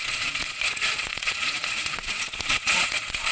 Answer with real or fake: fake